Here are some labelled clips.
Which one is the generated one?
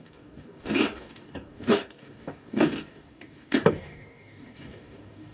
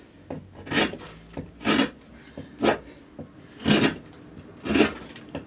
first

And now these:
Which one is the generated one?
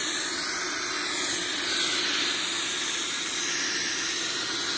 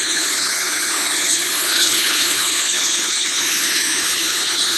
second